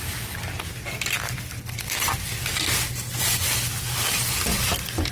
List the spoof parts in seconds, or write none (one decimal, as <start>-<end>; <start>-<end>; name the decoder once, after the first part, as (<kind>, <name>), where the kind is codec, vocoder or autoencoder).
none